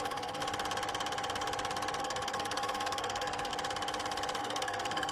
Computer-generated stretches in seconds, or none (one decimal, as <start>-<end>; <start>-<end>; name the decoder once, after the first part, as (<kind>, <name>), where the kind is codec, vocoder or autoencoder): 0.0-0.4 (codec, SNAC); 2.0-3.5; 4.4-5.1